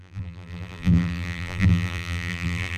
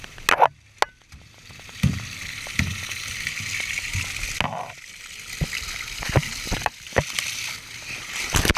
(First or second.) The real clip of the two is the second